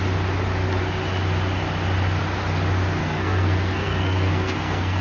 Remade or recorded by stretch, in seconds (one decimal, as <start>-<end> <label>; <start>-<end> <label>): 0.0-3.0 recorded; 3.0-5.0 remade